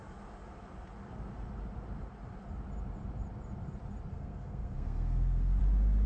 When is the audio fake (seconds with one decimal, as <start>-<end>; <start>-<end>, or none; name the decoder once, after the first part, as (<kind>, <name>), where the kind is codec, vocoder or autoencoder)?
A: 4.1-5.6 (codec, SNAC)